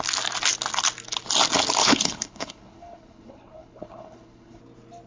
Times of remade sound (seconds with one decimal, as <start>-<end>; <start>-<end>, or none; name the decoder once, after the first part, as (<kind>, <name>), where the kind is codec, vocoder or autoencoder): 1.8-4.6 (codec, HILCodec)